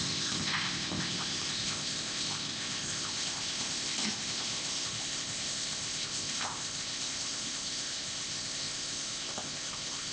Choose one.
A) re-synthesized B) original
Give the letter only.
A